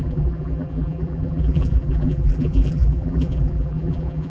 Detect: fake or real fake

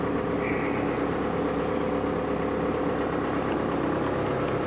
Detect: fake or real real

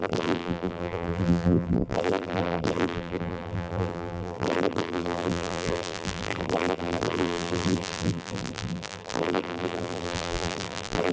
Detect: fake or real fake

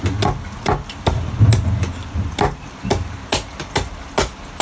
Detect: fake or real real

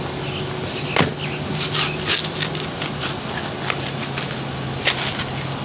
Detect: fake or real real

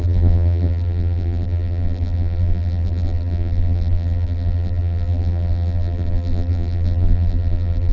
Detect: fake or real fake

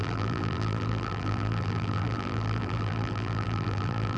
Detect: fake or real fake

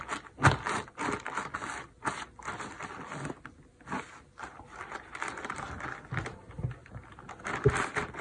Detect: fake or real real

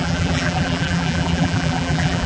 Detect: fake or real fake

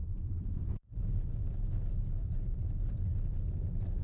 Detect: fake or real fake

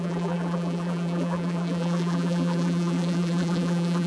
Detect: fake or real fake